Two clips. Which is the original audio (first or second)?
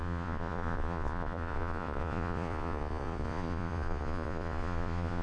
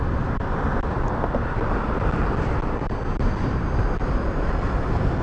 second